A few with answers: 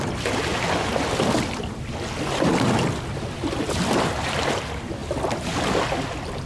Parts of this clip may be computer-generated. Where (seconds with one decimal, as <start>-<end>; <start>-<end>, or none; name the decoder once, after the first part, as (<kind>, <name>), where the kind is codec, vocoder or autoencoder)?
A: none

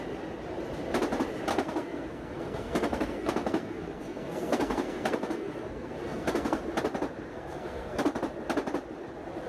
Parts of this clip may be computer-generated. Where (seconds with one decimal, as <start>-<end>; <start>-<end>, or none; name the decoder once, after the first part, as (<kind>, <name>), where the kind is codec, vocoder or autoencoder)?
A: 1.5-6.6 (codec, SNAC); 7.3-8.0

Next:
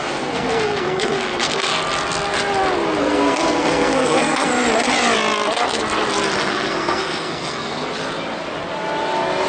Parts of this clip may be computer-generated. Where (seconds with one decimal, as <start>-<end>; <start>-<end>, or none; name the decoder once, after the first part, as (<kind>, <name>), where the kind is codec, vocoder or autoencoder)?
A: 0.0-1.7 (codec, SNAC); 3.0-4.5; 6.5-7.9